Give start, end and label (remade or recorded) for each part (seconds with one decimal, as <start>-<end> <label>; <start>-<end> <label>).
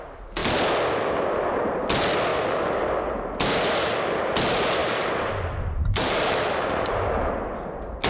0.0-4.8 recorded; 4.8-7.1 remade; 7.1-8.1 recorded